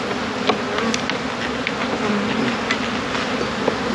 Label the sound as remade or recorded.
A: recorded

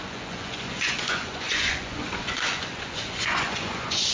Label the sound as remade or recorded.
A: remade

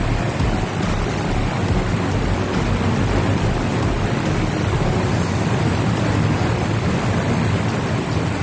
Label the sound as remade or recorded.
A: recorded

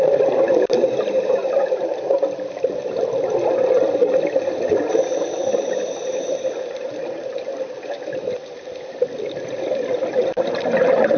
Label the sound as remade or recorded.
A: recorded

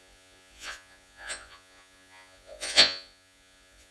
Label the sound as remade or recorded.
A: remade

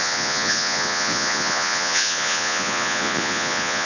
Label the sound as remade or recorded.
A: remade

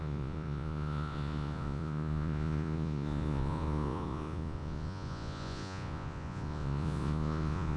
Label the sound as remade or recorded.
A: remade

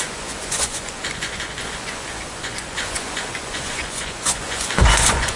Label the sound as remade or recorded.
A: remade